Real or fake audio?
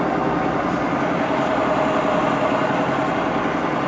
real